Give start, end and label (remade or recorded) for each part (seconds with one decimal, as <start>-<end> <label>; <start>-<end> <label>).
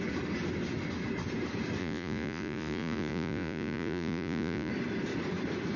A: 0.0-1.8 recorded; 1.8-4.7 remade; 4.7-5.8 recorded